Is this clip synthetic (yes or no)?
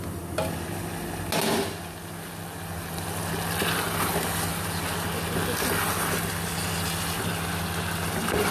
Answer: no